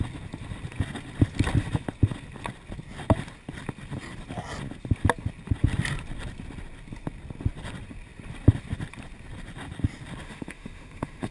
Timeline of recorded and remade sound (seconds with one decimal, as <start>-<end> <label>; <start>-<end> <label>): 0.0-10.2 recorded; 10.2-11.3 remade